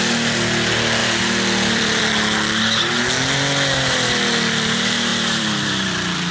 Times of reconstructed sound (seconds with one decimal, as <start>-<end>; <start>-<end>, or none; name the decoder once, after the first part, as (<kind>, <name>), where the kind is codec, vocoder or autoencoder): 1.0-2.0 (vocoder, BigVGAN v2); 5.1-6.3